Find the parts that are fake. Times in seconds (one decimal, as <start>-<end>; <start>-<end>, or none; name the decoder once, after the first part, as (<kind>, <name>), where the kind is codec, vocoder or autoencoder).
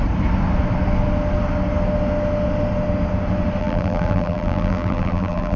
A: 3.6-5.6 (vocoder, BigVGAN v2)